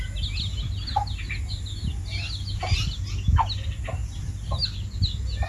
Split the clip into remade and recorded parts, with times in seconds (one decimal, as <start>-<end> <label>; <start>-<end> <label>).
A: 0.0-5.5 recorded

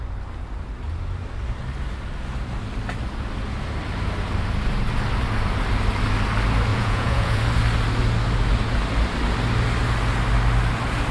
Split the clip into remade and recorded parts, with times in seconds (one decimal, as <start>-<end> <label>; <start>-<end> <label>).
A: 0.0-6.7 recorded; 6.7-7.4 remade; 7.4-11.1 recorded

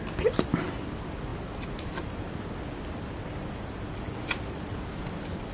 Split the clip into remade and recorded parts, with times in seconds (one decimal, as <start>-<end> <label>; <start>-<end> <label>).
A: 0.0-5.5 recorded

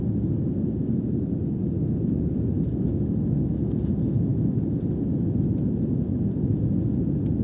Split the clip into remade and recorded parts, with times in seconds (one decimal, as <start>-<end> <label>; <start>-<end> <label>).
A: 0.0-7.4 recorded

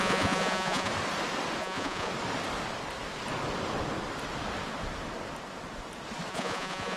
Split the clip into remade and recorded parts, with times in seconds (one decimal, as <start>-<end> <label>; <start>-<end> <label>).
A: 0.0-0.9 remade; 0.9-1.6 recorded; 1.6-2.1 remade; 2.1-6.3 recorded; 6.3-7.0 remade

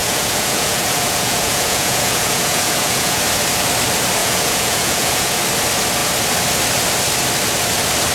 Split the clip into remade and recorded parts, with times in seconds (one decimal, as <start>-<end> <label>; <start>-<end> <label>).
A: 0.0-3.2 remade; 3.2-4.2 recorded; 4.2-5.4 remade; 5.4-8.1 recorded